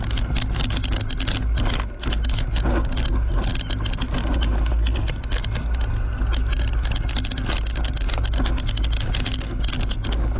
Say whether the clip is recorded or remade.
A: recorded